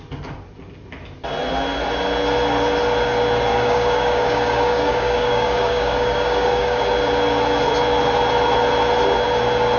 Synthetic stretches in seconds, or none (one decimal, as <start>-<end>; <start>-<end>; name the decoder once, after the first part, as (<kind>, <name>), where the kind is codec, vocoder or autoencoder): 3.5-6.8 (codec, DAC)